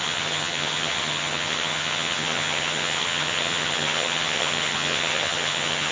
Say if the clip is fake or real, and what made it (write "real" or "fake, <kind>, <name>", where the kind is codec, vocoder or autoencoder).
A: fake, vocoder, HiFi-GAN